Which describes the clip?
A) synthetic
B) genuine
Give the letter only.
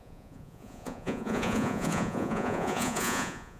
A